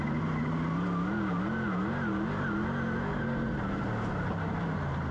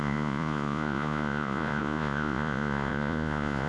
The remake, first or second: second